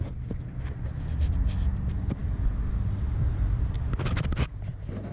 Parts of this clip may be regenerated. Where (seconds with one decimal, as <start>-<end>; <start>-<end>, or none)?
none